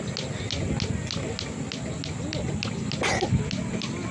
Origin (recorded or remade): recorded